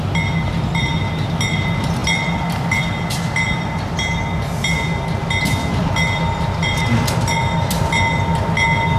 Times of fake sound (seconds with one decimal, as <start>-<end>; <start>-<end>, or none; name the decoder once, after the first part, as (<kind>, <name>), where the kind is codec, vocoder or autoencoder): none